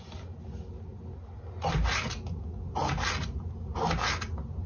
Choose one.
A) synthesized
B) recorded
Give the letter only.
B